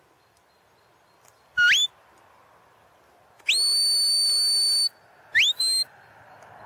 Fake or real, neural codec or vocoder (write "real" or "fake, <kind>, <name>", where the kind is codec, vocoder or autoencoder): real